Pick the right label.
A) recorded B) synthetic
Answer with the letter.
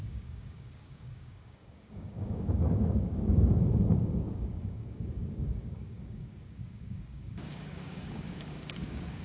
B